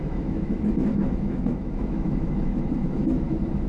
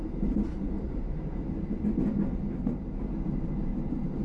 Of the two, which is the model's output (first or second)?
first